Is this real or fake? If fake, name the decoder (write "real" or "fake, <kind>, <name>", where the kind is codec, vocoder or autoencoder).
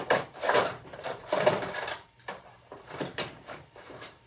fake, vocoder, BigVGAN v2